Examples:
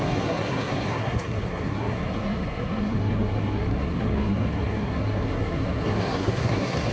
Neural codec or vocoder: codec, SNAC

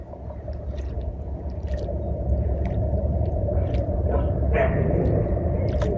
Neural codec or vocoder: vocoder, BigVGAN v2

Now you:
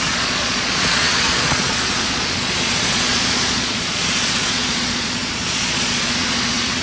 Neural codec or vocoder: vocoder, Vocos